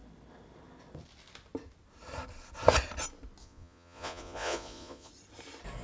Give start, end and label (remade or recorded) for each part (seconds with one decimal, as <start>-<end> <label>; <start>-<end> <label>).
0.0-3.4 recorded; 3.4-5.1 remade; 5.1-5.8 recorded